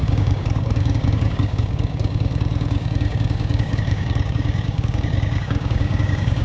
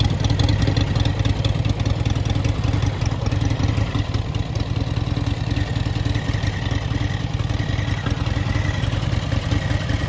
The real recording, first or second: second